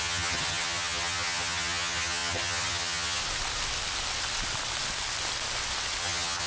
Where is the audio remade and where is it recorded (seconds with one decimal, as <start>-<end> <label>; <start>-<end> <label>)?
0.0-3.2 remade; 3.2-6.0 recorded; 6.0-6.5 remade